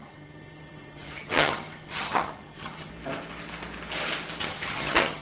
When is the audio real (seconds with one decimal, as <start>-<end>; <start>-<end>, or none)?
2.9-4.4